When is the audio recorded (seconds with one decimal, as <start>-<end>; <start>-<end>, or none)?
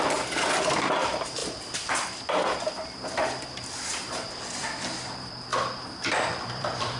none